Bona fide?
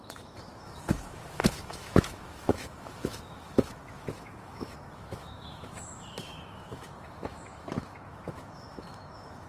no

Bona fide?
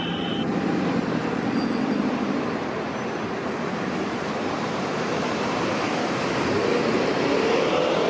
no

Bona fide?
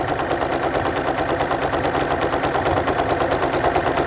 yes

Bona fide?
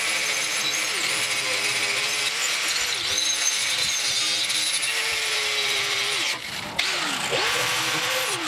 no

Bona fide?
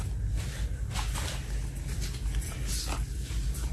yes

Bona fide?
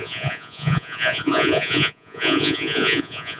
no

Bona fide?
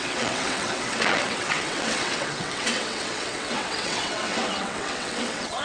no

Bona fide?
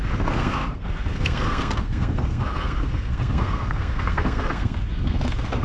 no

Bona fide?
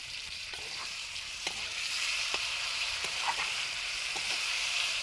no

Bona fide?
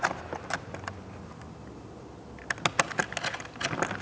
yes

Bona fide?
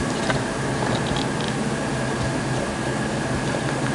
yes